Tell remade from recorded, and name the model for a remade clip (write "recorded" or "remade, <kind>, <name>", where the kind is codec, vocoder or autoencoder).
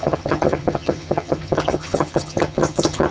remade, vocoder, HiFi-GAN